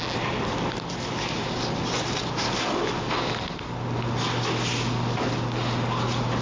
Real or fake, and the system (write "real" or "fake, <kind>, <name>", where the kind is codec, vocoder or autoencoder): real